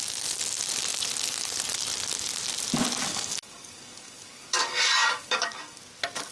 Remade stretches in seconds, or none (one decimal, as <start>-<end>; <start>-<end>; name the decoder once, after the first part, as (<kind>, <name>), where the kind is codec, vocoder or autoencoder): 3.1-5.8 (codec, DAC)